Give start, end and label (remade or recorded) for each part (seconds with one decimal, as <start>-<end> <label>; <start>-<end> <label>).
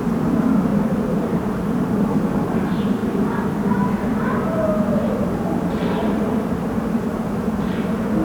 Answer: 0.0-0.7 recorded; 0.7-2.2 remade; 2.2-5.8 recorded; 5.8-6.5 remade; 6.5-7.1 recorded; 7.1-7.7 remade; 7.7-8.2 recorded